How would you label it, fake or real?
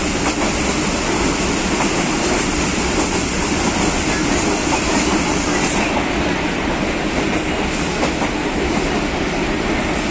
real